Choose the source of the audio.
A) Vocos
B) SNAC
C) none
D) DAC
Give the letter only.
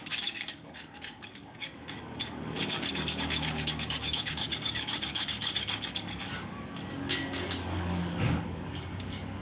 D